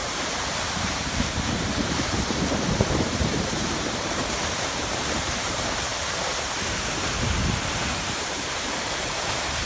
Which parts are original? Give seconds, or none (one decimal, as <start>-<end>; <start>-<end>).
5.9-6.7